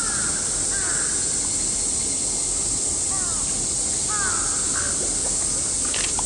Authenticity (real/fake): real